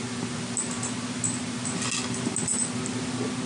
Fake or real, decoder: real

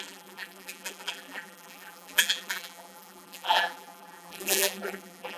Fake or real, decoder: fake, vocoder, BigVGAN v2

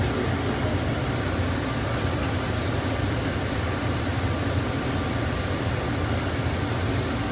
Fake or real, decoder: real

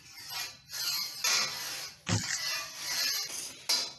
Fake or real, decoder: real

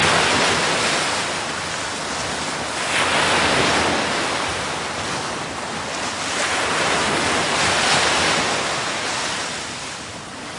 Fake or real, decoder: real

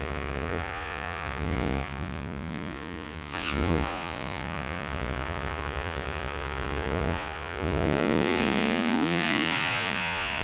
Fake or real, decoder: fake, vocoder, Vocos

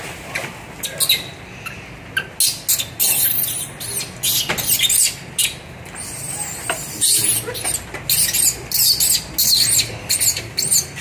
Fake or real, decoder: real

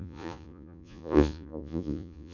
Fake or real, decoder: fake, vocoder, Vocos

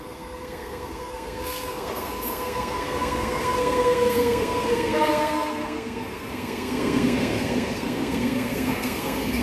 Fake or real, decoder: fake, codec, SNAC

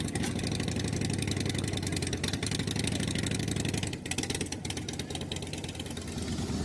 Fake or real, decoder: real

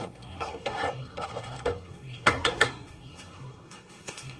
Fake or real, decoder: fake, codec, SNAC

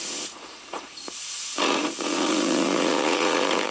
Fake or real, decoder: fake, vocoder, Vocos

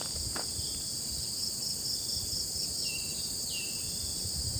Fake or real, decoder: real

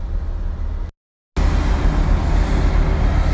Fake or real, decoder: real